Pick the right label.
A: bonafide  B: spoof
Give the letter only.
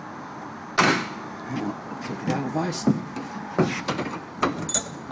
A